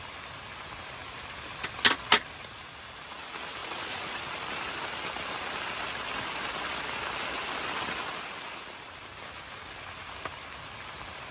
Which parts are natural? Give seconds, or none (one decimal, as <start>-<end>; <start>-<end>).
0.0-3.6; 4.2-11.3